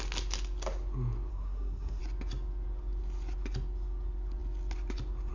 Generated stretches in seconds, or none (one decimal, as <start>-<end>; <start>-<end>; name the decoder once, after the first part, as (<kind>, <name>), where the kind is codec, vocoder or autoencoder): 1.3-2.0 (codec, SNAC)